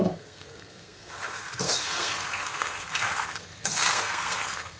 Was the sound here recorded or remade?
remade